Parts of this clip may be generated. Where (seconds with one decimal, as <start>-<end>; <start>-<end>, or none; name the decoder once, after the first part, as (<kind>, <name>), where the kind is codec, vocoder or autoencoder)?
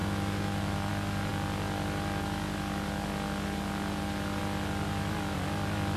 0.0-0.9 (autoencoder, DAC-VAE)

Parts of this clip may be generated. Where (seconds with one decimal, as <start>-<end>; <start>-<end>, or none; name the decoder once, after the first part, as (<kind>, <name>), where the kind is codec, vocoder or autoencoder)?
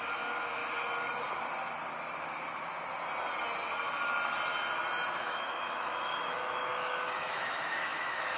0.0-0.6 (autoencoder, DAC-VAE); 5.2-8.4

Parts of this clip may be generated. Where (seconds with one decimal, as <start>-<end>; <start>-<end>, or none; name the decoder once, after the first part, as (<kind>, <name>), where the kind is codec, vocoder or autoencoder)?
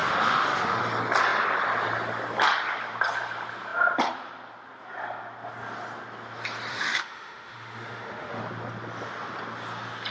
0.0-0.8 (autoencoder, DAC-VAE); 6.7-8.4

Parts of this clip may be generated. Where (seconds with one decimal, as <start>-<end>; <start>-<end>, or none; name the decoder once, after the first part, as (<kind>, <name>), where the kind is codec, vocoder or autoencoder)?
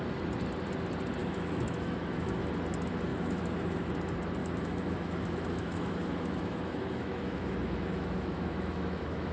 1.2-2.5 (autoencoder, DAC-VAE); 3.1-3.9; 4.4-9.3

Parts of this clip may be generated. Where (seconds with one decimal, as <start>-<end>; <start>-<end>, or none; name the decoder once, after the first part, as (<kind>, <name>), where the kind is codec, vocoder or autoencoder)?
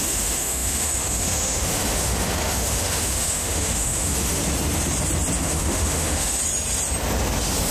0.0-4.4 (autoencoder, DAC-VAE); 5.4-6.4